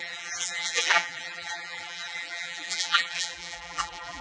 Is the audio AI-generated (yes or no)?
yes